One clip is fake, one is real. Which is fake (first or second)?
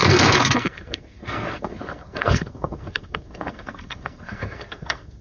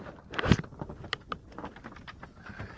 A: first